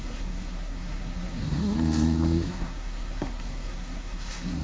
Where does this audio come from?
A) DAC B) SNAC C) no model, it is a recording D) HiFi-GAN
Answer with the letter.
B